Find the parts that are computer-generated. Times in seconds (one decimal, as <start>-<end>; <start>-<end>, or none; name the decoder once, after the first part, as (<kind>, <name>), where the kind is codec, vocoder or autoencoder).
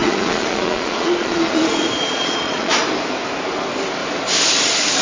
0.0-2.8 (vocoder, Vocos)